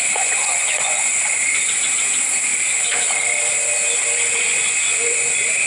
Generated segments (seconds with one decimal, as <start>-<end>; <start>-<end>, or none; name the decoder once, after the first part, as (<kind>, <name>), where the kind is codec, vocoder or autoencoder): 0.0-1.1 (vocoder, Vocos); 4.4-5.7